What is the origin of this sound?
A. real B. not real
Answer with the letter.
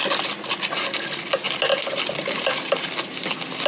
A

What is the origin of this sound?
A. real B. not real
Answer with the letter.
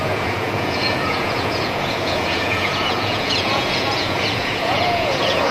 B